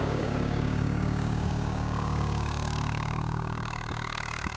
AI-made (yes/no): yes